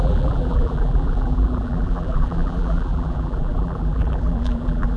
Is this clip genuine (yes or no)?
no